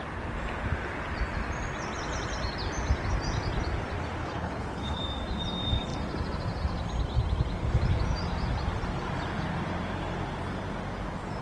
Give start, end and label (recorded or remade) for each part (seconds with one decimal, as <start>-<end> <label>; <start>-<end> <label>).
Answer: 0.0-4.2 recorded; 4.2-5.0 remade; 5.0-11.4 recorded